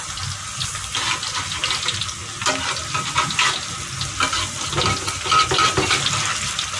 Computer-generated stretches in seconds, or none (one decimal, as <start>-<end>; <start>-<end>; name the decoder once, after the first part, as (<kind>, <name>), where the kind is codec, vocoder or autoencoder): none